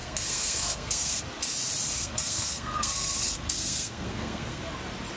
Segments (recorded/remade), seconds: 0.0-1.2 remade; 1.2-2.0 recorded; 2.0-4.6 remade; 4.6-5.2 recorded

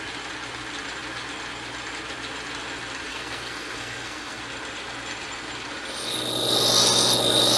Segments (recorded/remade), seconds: 0.0-3.1 recorded; 3.1-4.4 remade; 4.4-7.6 recorded

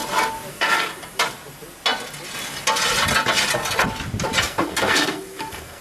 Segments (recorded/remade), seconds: 0.0-0.5 recorded; 0.5-0.9 remade; 0.9-4.4 recorded; 4.4-5.8 remade

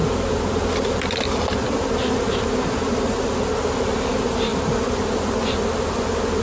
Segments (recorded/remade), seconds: 0.0-6.4 recorded

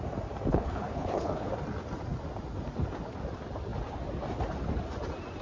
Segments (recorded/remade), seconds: 0.0-0.5 recorded; 0.5-1.5 remade; 1.5-5.4 recorded

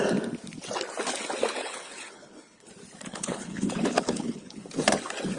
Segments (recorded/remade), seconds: 0.0-1.6 recorded; 1.6-2.7 remade; 2.7-3.1 recorded; 3.1-4.6 remade; 4.6-5.4 recorded